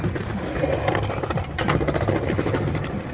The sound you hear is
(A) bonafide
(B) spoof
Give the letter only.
A